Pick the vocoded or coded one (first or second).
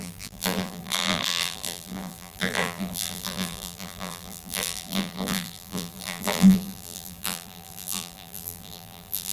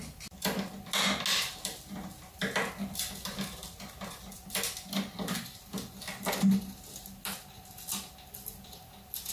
first